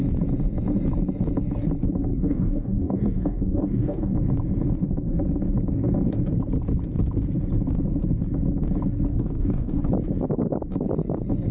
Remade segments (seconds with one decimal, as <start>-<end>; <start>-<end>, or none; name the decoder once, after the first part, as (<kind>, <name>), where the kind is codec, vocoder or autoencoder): 2.1-4.1 (codec, DAC); 9.1-9.8

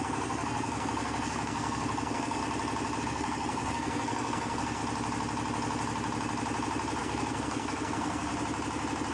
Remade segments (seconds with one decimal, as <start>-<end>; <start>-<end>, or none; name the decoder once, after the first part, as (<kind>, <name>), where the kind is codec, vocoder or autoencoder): 0.0-2.4 (codec, SNAC); 3.0-4.8; 7.0-8.3

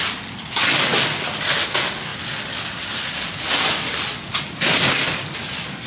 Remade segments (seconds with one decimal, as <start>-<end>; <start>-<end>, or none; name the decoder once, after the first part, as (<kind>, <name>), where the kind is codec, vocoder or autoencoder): none

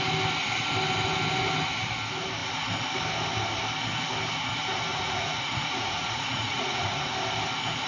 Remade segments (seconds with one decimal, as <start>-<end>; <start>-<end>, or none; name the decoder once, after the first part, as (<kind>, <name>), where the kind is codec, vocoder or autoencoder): 4.9-7.1 (vocoder, Vocos)

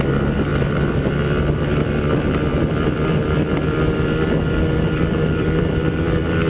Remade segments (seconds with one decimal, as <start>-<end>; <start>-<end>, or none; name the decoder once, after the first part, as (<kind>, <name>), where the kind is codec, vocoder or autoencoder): 0.5-1.1 (vocoder, BigVGAN v2); 2.5-6.5

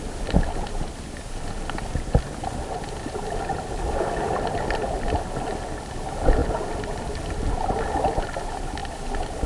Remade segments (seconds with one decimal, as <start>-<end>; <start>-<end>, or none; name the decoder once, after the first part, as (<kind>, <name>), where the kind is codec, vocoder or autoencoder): none

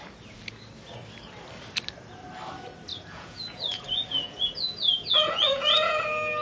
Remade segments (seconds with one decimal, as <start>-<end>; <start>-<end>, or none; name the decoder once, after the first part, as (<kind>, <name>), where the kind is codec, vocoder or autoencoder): 2.9-6.0 (vocoder, Vocos)

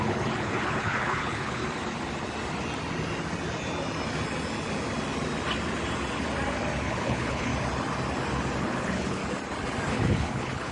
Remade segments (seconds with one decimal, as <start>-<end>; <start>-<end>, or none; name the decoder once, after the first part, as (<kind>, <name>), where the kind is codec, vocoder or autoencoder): 0.0-1.6 (codec, HILCodec); 6.8-7.5; 8.6-9.2; 9.9-10.7